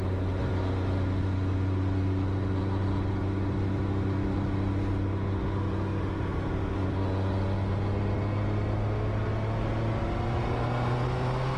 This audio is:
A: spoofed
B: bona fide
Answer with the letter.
B